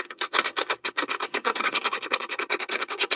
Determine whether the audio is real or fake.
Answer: fake